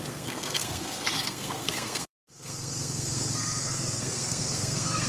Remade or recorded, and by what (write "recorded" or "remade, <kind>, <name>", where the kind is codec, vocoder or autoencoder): remade, codec, SNAC